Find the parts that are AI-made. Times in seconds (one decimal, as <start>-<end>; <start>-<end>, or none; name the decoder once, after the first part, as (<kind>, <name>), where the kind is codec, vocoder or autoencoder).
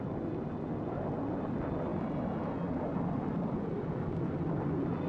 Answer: none